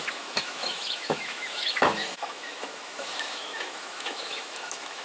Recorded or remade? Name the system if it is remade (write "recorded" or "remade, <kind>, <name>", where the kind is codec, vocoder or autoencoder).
remade, autoencoder, DAC-VAE